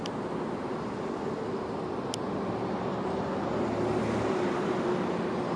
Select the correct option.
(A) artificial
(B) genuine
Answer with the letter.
B